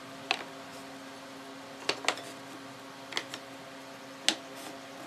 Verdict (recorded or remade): recorded